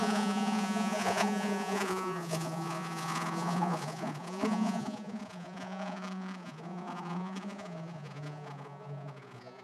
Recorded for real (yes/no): no